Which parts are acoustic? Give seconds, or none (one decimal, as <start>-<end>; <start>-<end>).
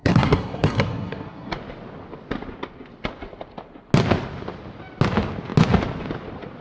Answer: 1.5-6.6